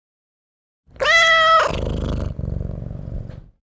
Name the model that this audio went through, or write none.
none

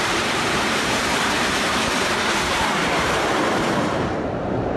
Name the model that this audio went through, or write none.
vocoder, BigVGAN v2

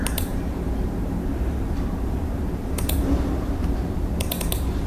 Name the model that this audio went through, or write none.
vocoder, BigVGAN v2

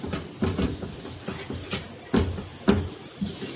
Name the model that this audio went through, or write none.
none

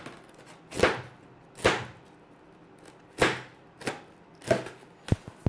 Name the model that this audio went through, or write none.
none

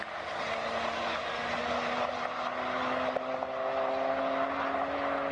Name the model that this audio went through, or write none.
none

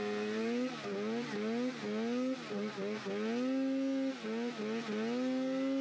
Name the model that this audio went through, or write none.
none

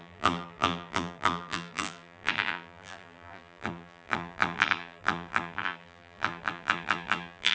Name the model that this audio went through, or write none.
vocoder, BigVGAN v2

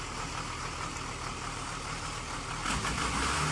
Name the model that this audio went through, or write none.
vocoder, BigVGAN v2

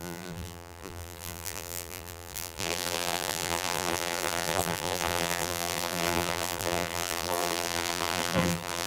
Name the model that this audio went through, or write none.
vocoder, BigVGAN v2